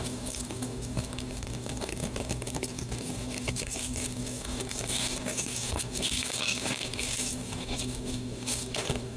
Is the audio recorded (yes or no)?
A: no